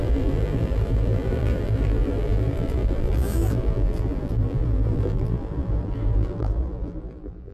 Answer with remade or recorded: remade